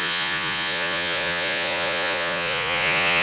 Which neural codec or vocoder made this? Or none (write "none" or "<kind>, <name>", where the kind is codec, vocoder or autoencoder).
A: vocoder, Vocos